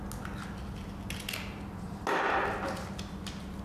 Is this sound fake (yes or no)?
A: no